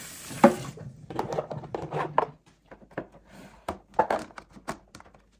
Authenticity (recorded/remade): recorded